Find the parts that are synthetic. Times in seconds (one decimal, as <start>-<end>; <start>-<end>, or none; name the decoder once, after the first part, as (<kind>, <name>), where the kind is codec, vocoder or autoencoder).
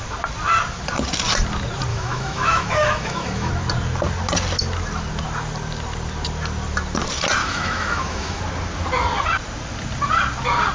1.9-3.5 (autoencoder, DAC-VAE); 7.4-8.4